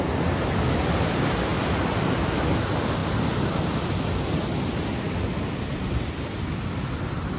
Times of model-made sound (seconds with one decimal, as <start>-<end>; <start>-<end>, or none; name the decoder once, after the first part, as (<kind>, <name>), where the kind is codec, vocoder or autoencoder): none